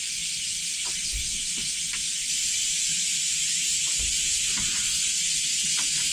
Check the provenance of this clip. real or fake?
real